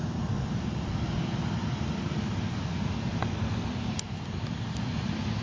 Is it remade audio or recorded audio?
recorded